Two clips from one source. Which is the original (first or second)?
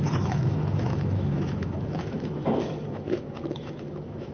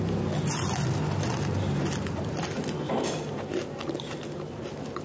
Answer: second